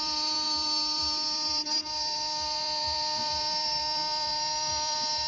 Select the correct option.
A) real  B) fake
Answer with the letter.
B